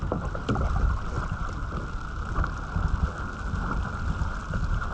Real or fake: real